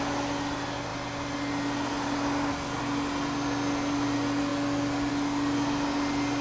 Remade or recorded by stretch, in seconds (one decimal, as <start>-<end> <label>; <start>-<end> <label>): 0.0-6.4 recorded